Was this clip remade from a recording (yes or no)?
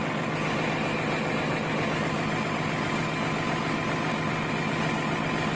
no